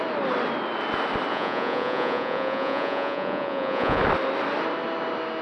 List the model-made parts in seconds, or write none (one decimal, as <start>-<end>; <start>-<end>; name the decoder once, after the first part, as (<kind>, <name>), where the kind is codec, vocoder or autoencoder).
1.3-4.0 (vocoder, Vocos)

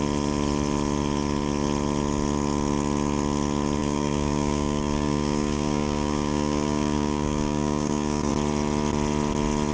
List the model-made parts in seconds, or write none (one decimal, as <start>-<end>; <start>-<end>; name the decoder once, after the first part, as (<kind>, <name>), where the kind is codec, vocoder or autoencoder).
3.8-8.3 (codec, DAC)

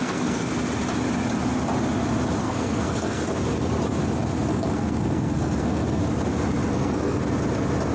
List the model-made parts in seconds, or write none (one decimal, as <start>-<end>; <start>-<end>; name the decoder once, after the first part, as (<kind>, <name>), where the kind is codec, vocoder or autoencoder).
0.0-0.5 (codec, SNAC); 2.4-3.2; 4.5-6.0; 6.7-7.2

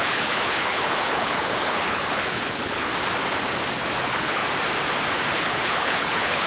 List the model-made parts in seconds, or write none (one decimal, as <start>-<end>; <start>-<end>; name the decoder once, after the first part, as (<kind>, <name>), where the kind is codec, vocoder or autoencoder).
0.0-2.9 (codec, HILCodec); 4.0-4.4; 5.3-6.5

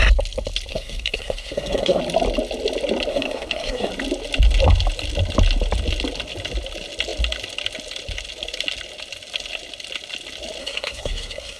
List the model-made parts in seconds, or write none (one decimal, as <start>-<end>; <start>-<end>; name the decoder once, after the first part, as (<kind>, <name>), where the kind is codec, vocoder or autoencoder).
0.7-2.0 (codec, SNAC); 3.1-3.9; 10.6-11.6

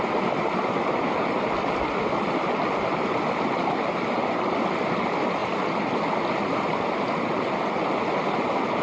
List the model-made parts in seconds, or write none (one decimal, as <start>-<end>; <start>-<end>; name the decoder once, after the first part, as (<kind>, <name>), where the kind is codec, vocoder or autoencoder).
0.0-5.4 (vocoder, BigVGAN v2)

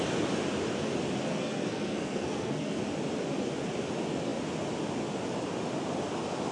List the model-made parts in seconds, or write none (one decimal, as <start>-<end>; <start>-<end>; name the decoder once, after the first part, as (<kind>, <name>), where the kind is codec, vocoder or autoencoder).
1.3-2.8 (codec, SNAC)